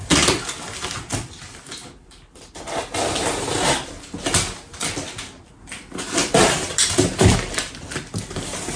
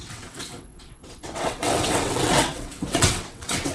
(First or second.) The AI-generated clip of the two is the second